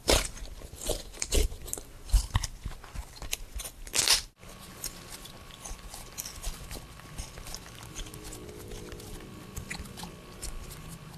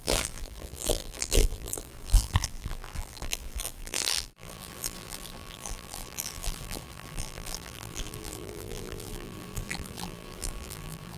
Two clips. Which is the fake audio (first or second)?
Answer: second